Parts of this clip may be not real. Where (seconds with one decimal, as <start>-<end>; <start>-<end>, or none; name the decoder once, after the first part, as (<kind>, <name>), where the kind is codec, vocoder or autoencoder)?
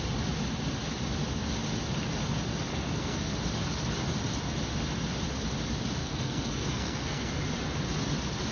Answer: 2.7-3.3 (codec, SNAC); 6.0-7.3